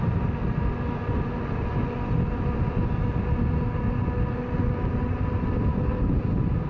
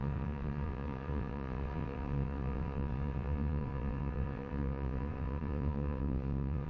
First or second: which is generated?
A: second